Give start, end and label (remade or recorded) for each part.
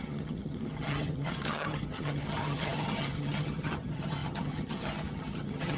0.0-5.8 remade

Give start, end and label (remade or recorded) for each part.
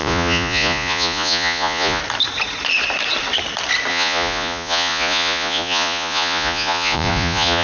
0.0-2.0 remade; 2.0-3.9 recorded; 3.9-7.6 remade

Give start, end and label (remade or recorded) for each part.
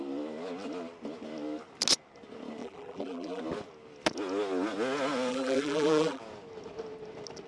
0.0-2.6 recorded; 2.6-3.4 remade; 3.4-5.3 recorded; 5.3-6.2 remade; 6.2-7.5 recorded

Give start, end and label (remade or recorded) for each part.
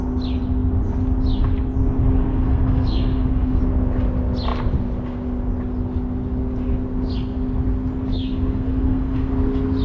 0.0-2.3 recorded; 2.3-3.6 remade; 3.6-8.1 recorded; 8.1-9.3 remade; 9.3-9.8 recorded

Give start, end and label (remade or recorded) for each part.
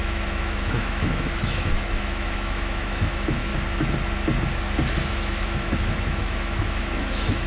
0.0-3.5 remade; 3.5-5.1 recorded; 5.1-7.5 remade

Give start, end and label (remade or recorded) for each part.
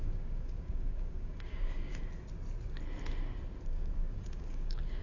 0.0-1.9 remade; 1.9-3.6 recorded; 3.6-5.0 remade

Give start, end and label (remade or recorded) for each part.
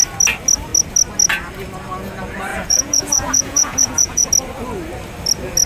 0.0-2.5 recorded; 2.5-4.3 remade; 4.3-5.7 recorded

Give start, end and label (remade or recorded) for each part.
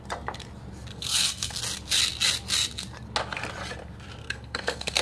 0.0-0.9 recorded; 0.9-1.6 remade; 1.6-4.2 recorded; 4.2-5.0 remade